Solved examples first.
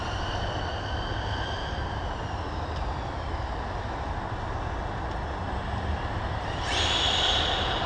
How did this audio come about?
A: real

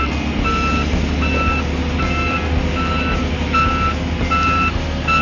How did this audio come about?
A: real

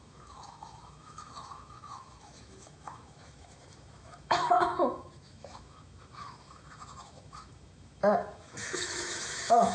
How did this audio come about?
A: fake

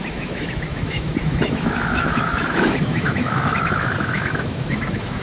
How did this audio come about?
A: fake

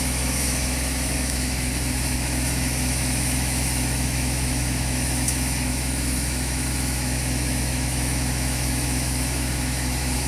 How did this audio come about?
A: fake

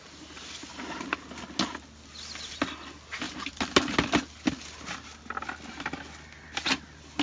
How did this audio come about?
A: real